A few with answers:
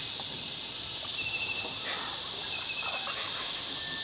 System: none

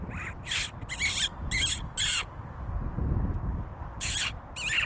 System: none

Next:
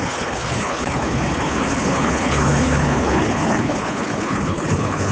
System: codec, HILCodec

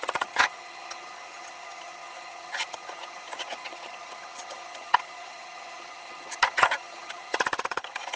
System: vocoder, HiFi-GAN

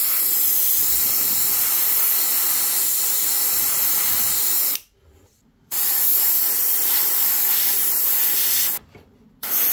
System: none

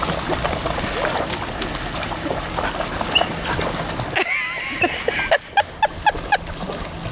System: none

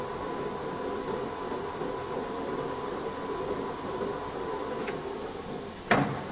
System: none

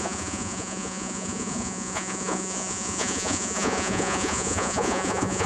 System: vocoder, Vocos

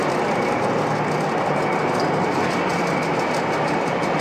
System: none